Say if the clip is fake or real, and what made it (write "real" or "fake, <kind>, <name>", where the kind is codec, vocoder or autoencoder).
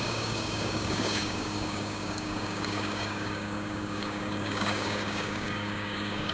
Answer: fake, codec, DAC